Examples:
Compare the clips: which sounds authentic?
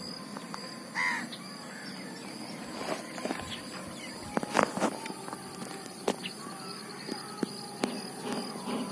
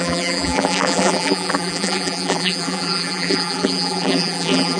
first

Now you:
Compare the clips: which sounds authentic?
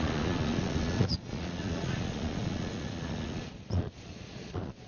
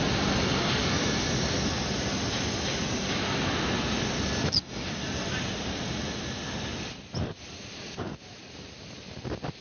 second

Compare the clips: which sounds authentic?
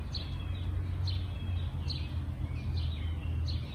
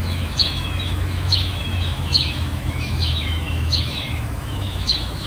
first